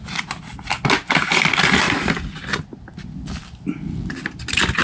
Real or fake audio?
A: real